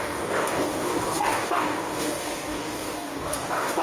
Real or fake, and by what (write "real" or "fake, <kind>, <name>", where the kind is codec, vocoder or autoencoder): fake, codec, DAC